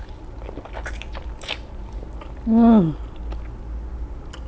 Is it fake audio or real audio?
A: real